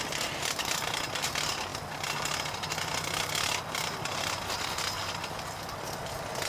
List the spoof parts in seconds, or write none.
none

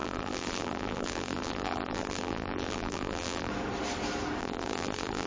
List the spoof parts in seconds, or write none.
0.0-3.5; 4.4-5.3